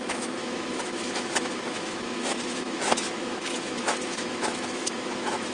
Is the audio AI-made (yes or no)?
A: yes